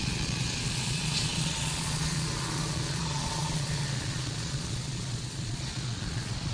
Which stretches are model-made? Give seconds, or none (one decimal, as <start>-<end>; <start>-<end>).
0.0-6.5